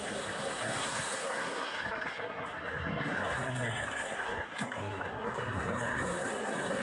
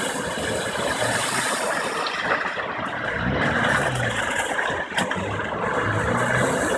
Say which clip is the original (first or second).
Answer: second